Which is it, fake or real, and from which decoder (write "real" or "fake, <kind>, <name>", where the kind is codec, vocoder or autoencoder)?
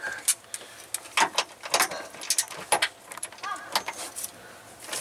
real